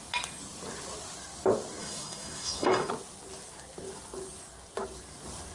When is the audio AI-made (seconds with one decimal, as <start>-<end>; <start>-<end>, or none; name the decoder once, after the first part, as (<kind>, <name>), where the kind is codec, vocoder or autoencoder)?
1.8-2.9 (autoencoder, DAC-VAE)